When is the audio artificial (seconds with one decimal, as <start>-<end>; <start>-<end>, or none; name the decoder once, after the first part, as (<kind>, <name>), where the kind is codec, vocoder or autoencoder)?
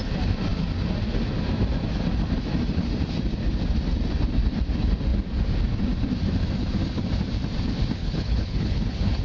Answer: 8.0-9.2 (codec, HILCodec)